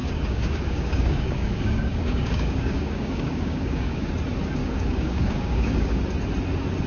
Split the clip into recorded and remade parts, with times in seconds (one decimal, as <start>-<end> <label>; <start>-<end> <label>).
0.0-4.1 remade; 4.1-4.6 recorded; 4.6-6.0 remade; 6.0-6.9 recorded